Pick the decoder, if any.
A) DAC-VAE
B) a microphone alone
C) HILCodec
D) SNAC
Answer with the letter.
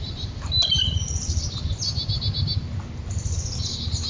B